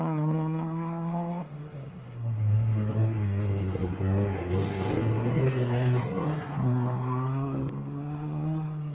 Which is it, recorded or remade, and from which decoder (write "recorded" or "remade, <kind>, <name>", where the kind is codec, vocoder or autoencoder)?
remade, codec, SNAC